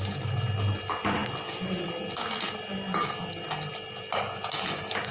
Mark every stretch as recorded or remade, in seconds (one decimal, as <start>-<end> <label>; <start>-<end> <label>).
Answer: 0.0-5.1 recorded